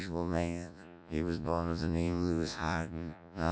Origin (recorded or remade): remade